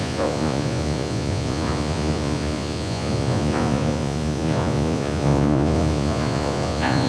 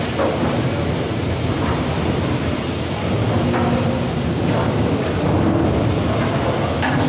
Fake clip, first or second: first